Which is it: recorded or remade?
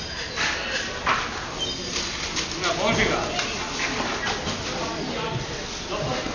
recorded